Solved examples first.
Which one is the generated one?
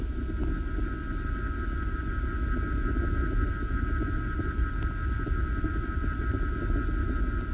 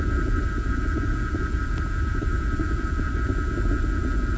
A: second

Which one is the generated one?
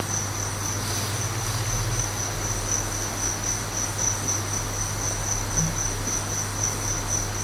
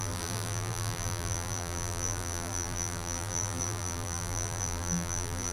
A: second